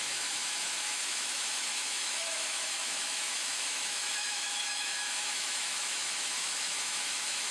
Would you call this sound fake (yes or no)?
yes